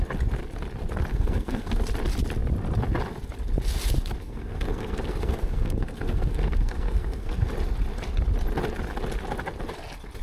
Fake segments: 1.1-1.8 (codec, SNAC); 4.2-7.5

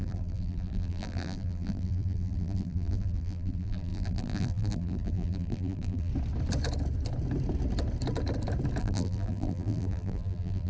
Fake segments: 0.0-6.1 (vocoder, BigVGAN v2); 8.8-10.7

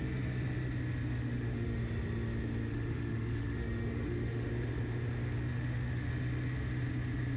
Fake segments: 1.2-1.8 (autoencoder, DAC-VAE); 2.7-4.5; 5.5-6.1

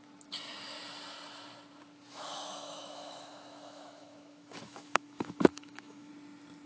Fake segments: 2.1-6.1 (autoencoder, DAC-VAE)

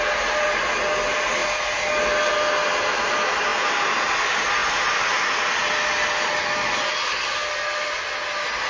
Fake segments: none

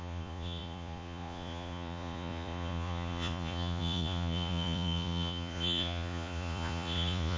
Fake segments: 0.0-7.4 (vocoder, Vocos)

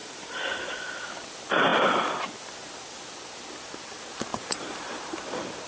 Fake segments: 0.0-0.6 (vocoder, BigVGAN v2); 4.3-5.2

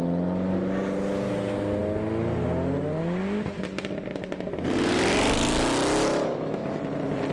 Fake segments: 6.1-6.8 (autoencoder, DAC-VAE)